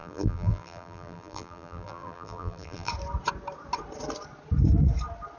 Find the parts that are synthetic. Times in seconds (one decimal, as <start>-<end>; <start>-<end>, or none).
0.0-2.9